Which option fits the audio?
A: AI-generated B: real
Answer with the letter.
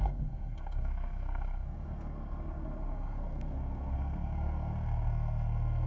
A